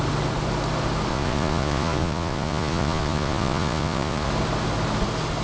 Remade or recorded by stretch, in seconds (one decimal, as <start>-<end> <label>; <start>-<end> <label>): 0.0-1.1 recorded; 1.1-4.3 remade; 4.3-5.4 recorded